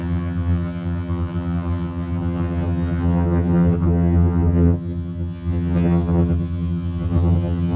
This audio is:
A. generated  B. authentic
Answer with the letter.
A